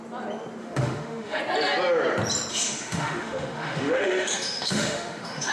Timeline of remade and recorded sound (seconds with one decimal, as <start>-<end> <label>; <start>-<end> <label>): 0.0-0.6 recorded; 0.6-1.4 remade; 1.4-2.5 recorded; 2.5-5.5 remade